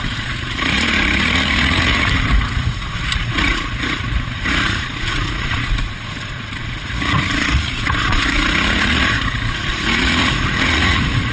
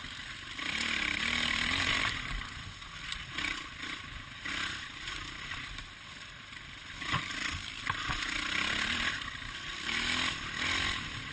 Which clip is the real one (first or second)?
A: second